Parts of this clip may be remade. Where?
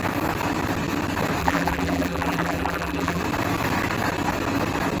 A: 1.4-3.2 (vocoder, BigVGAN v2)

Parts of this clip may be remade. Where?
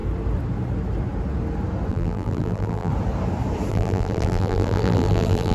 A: 1.9-2.9 (vocoder, BigVGAN v2); 3.7-5.5